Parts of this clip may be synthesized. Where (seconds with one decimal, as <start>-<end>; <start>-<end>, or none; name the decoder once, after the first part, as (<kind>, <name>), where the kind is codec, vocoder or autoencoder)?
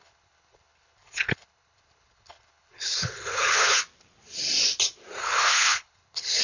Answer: 0.0-3.8 (codec, HILCodec); 5.2-6.4